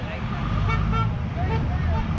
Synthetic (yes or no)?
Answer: no